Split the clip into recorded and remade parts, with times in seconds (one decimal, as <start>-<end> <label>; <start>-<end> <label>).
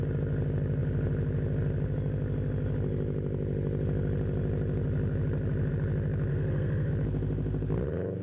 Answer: 0.0-6.3 recorded; 6.3-6.9 remade; 6.9-8.2 recorded